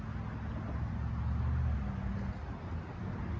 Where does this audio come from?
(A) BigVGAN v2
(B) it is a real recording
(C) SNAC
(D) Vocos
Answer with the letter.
B